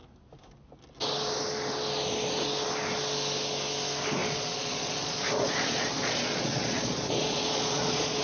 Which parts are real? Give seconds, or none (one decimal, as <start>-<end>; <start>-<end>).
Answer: 0.0-4.2